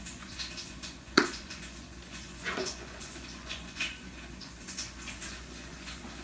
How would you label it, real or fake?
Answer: fake